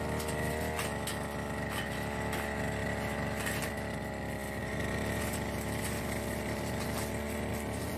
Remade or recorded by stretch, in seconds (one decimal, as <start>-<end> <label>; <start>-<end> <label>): 0.0-4.6 recorded; 4.6-7.1 remade; 7.1-8.0 recorded